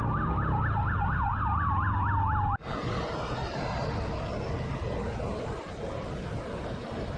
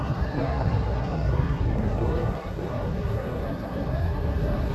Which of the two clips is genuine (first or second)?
first